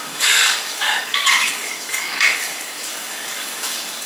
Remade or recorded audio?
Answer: remade